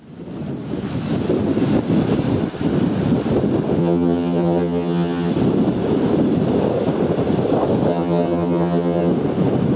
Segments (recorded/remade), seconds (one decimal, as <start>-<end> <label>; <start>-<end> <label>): 0.0-3.8 recorded; 3.8-5.3 remade; 5.3-7.9 recorded; 7.9-9.1 remade; 9.1-9.8 recorded